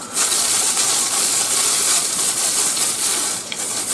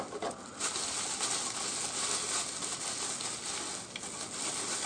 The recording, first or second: second